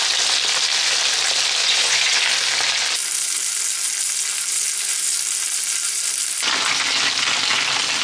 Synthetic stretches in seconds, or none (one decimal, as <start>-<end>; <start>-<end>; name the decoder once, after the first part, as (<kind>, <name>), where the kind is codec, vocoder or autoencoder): 1.6-2.2 (vocoder, Vocos)